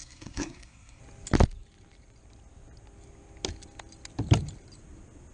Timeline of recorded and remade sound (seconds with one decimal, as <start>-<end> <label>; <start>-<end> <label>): 0.0-1.0 remade; 1.0-5.3 recorded